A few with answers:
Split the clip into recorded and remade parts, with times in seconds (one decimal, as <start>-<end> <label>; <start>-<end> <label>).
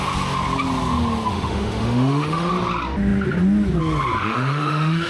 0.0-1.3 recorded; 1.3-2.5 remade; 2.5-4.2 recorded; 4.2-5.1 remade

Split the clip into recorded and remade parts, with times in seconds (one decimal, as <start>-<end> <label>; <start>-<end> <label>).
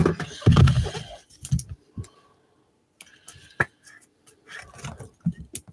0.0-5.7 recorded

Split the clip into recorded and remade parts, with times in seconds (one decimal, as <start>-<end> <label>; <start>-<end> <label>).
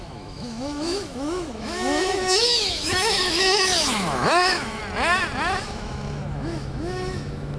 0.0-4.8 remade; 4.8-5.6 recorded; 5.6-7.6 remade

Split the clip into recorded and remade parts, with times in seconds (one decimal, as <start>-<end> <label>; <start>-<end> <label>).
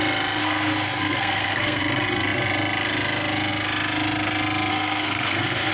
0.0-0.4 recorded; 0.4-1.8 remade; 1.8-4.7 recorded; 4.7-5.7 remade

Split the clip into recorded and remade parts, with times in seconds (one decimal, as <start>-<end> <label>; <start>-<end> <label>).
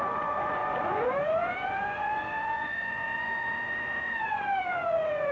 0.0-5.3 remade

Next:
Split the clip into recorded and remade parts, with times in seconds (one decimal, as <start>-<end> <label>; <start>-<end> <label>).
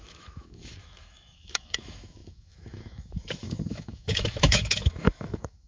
0.0-5.7 remade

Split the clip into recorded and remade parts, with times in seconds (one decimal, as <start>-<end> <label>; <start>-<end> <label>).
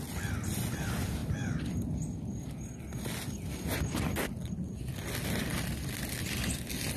0.0-7.0 recorded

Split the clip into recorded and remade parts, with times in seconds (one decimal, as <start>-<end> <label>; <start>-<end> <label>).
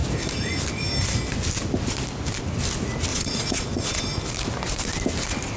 0.0-3.1 recorded; 3.1-4.0 remade; 4.0-5.6 recorded